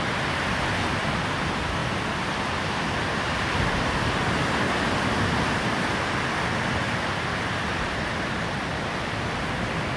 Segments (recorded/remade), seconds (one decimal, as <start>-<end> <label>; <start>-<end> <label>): 0.0-10.0 recorded